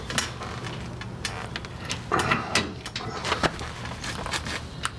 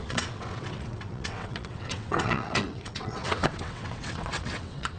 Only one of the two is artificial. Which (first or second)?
second